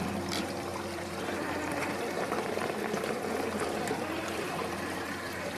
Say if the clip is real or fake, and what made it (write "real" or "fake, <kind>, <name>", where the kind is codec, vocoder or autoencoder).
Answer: fake, vocoder, BigVGAN v2